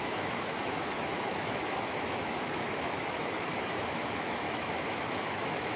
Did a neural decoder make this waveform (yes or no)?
yes